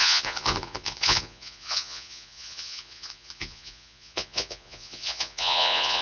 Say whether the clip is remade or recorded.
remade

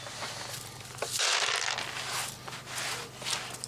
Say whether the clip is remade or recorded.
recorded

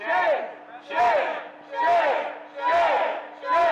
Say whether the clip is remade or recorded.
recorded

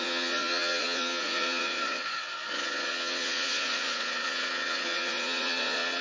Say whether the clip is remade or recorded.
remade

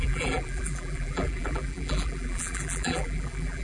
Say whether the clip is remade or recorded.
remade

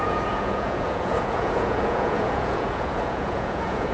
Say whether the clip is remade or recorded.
remade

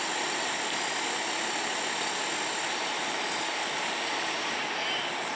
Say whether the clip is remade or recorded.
recorded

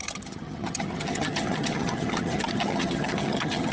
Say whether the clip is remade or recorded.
remade